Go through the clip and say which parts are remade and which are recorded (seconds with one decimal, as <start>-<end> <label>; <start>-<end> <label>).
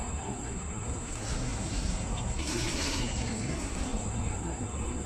0.0-5.1 remade